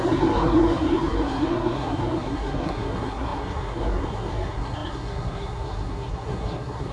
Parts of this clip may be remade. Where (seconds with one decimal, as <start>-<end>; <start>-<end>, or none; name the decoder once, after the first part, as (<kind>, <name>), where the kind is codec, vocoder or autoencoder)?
0.0-6.9 (codec, SNAC)